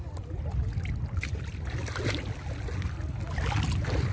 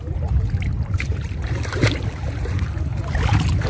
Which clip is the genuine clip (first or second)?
first